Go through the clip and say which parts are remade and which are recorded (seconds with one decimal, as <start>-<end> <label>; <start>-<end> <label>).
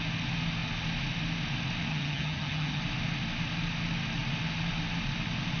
0.0-1.9 recorded; 1.9-2.8 remade; 2.8-5.6 recorded